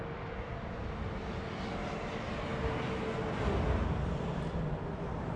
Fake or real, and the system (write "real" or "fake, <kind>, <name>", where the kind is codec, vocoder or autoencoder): real